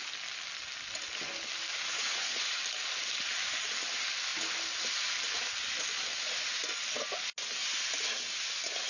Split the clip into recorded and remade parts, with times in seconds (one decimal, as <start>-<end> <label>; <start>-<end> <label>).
0.0-1.7 recorded; 1.7-2.6 remade; 2.6-8.9 recorded